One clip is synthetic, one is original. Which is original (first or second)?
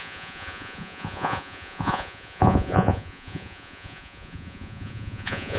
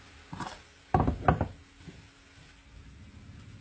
second